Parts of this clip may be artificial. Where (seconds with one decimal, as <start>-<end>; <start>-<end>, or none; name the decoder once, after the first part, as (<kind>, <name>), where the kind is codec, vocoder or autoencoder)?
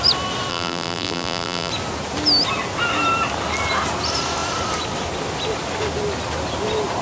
0.5-1.7 (vocoder, BigVGAN v2)